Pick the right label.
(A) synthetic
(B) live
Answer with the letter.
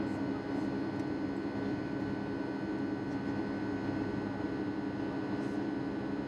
B